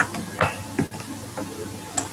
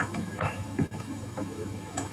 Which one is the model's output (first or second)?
second